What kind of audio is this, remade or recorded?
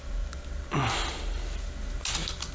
recorded